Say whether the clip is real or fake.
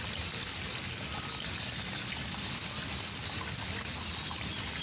real